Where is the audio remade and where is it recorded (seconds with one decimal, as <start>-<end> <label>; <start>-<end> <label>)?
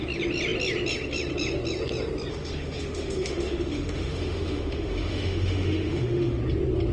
0.0-2.3 recorded; 2.3-6.4 remade; 6.4-6.9 recorded